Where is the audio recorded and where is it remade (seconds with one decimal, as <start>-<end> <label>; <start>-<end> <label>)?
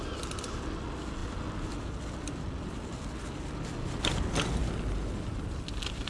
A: 0.0-6.1 recorded